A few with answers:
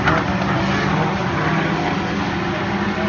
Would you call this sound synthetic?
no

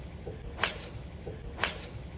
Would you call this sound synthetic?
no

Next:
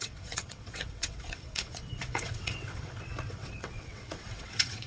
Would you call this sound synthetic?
yes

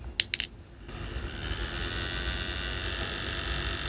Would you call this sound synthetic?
no